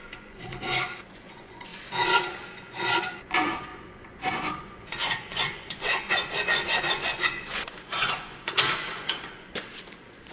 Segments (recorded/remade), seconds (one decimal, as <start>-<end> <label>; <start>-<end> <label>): 0.0-10.3 remade